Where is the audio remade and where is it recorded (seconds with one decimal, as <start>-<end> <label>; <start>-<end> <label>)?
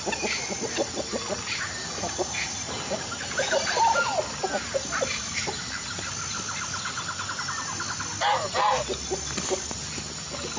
0.0-1.1 recorded; 1.1-4.2 remade; 4.2-10.6 recorded